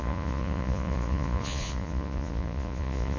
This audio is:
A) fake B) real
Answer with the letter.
A